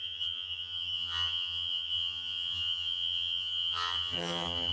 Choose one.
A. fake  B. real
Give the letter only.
A